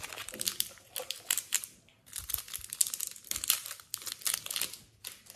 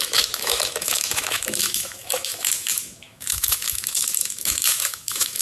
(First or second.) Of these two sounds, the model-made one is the second